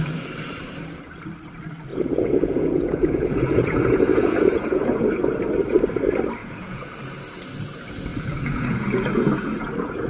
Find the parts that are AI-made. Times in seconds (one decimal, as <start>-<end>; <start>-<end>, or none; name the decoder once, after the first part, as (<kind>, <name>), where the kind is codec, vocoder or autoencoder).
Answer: 1.9-5.2 (vocoder, Vocos); 6.4-6.9; 8.1-10.1